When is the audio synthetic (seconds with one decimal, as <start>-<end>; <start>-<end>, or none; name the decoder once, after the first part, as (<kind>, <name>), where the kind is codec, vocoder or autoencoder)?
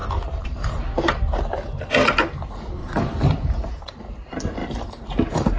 0.0-0.8 (vocoder, BigVGAN v2); 2.8-4.0; 4.6-5.6